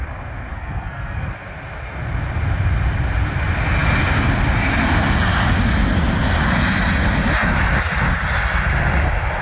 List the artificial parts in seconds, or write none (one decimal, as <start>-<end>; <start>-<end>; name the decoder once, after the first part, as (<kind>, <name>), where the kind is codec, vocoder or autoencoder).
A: 0.5-1.3 (codec, SNAC)